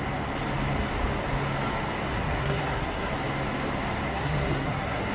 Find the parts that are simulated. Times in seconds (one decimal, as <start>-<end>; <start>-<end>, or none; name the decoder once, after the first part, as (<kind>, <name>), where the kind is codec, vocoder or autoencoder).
2.1-3.1 (codec, SNAC); 4.1-5.1